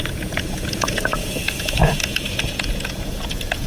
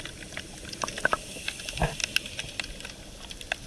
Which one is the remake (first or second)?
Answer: first